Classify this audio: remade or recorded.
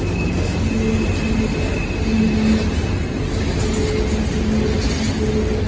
recorded